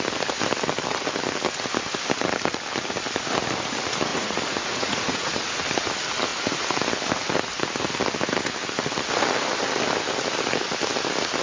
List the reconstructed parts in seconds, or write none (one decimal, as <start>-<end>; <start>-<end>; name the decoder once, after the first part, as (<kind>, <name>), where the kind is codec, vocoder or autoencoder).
4.1-5.4 (vocoder, Vocos)